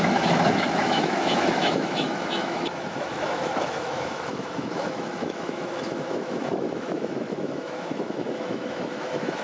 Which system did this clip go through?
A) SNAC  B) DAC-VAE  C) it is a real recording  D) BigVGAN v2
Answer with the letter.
B